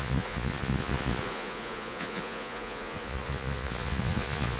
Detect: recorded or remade remade